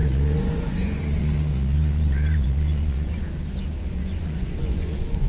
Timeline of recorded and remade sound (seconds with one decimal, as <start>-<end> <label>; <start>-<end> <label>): 0.0-3.2 remade; 3.2-3.8 recorded; 3.8-5.3 remade